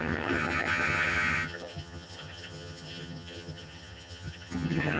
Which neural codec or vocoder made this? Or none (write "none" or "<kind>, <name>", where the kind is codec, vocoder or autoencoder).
vocoder, HiFi-GAN